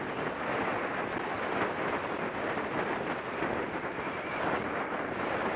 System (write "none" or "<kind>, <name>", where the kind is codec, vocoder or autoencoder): none